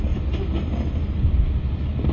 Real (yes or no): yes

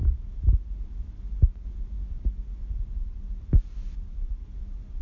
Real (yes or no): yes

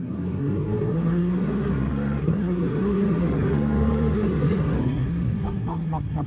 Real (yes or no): no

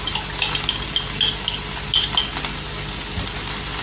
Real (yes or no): yes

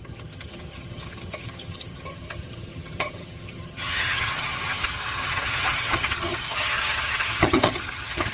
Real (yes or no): no